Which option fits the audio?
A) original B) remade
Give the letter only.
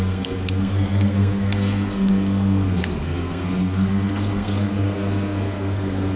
B